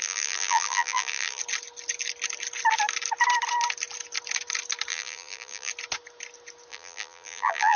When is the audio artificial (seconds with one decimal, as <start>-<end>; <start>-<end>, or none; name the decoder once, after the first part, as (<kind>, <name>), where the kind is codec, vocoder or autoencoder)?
0.0-1.4 (vocoder, BigVGAN v2); 4.9-5.7; 6.7-7.8